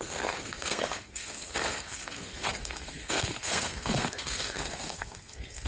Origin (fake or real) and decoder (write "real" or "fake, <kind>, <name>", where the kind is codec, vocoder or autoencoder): fake, codec, SNAC